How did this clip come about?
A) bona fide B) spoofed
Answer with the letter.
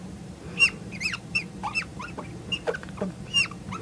B